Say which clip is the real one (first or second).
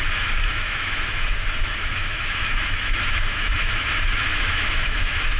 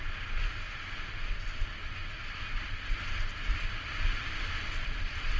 second